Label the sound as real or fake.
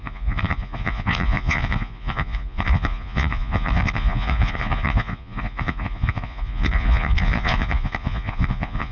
fake